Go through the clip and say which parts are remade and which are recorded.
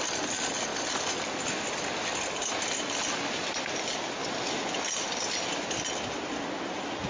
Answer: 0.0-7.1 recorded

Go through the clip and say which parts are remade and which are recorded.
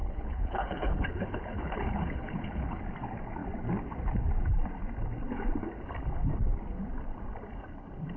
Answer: 0.0-2.8 remade; 2.8-8.2 recorded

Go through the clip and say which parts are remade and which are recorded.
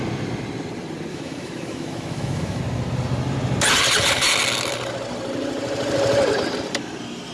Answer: 0.0-1.1 recorded; 1.1-2.6 remade; 2.6-7.3 recorded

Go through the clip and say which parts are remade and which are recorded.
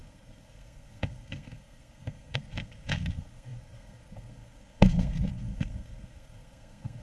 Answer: 0.0-7.0 remade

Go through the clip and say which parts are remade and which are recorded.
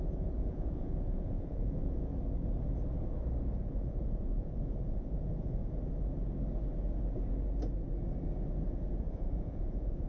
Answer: 0.0-2.1 remade; 2.1-3.6 recorded; 3.6-5.6 remade; 5.6-9.0 recorded; 9.0-10.1 remade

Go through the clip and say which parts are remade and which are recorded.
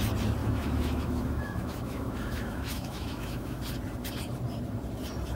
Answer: 0.0-0.4 recorded; 0.4-3.6 remade; 3.6-5.4 recorded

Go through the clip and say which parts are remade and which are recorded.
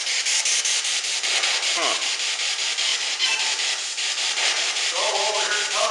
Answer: 0.0-2.9 recorded; 2.9-5.4 remade; 5.4-5.9 recorded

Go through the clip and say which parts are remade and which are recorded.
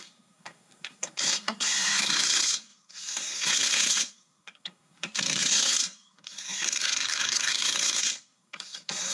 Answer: 0.0-9.1 remade